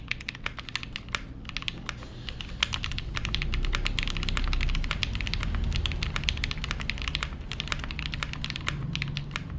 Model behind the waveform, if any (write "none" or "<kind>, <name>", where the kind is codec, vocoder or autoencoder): none